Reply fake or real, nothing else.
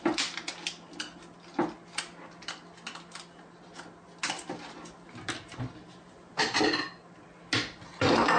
real